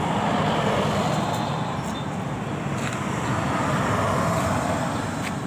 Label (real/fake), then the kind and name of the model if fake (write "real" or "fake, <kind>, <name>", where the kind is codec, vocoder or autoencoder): real